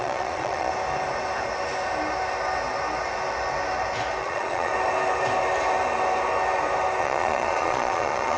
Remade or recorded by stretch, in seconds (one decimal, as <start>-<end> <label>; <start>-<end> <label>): 0.0-0.7 remade; 0.7-4.2 recorded; 4.2-4.7 remade; 4.7-7.0 recorded; 7.0-8.4 remade